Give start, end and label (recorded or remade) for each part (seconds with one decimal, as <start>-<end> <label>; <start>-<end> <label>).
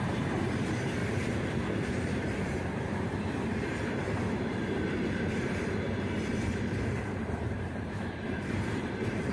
0.0-9.3 remade